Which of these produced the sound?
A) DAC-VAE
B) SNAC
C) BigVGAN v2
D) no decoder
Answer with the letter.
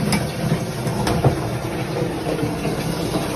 D